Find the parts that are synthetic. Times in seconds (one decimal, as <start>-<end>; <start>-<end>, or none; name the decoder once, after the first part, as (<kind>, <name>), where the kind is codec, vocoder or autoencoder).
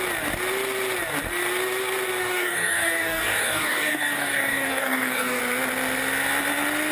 2.2-5.4 (codec, DAC)